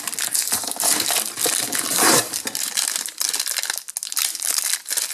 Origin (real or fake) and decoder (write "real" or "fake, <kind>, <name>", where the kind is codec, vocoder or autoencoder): real